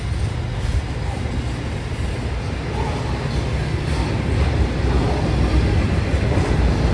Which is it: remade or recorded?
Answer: recorded